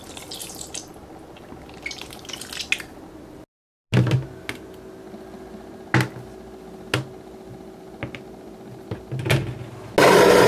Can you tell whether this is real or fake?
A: real